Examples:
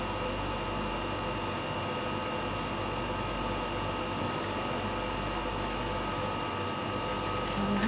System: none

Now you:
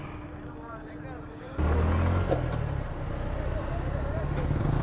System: none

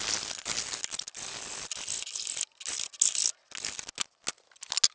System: none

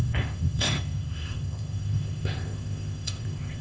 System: codec, ZipCodec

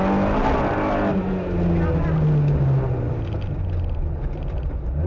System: none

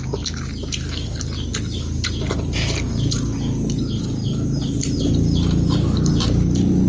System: none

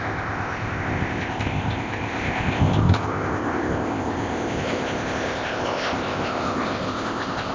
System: codec, ZipCodec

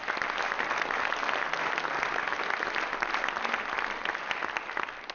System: none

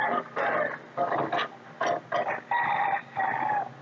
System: none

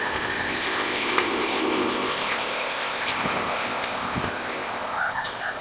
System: codec, ZipCodec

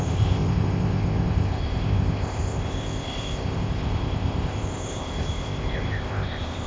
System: codec, ZipCodec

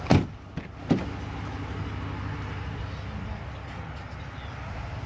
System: none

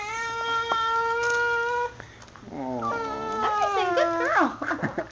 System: none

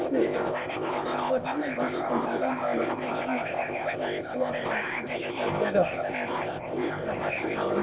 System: codec, ZipCodec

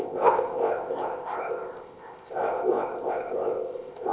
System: codec, ZipCodec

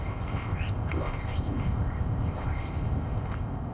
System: codec, ZipCodec